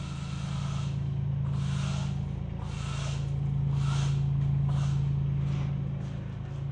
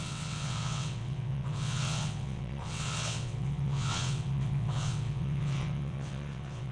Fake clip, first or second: second